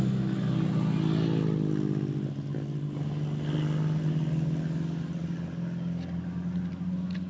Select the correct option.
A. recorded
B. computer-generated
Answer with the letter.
A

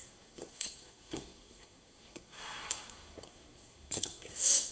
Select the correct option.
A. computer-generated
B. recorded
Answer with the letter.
A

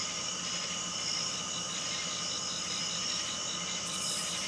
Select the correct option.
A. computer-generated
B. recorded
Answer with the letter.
B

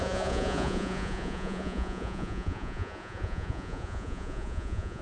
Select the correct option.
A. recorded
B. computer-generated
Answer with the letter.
B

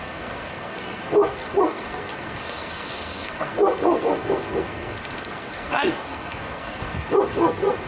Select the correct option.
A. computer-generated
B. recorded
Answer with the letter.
A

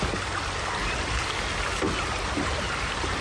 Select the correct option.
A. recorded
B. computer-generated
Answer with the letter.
A